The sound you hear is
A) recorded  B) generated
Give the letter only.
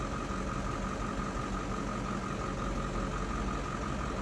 A